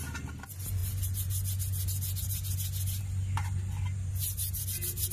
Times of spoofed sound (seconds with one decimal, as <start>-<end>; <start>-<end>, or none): none